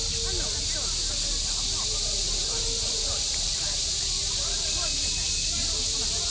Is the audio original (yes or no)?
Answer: yes